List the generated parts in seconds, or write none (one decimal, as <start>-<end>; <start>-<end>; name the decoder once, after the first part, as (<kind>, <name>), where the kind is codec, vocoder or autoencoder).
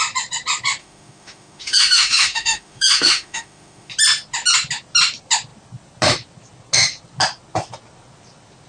0.8-3.9 (autoencoder, DAC-VAE)